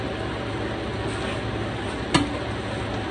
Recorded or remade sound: recorded